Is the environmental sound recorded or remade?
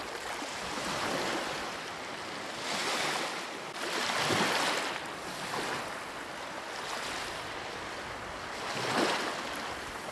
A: recorded